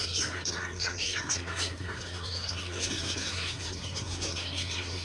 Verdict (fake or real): fake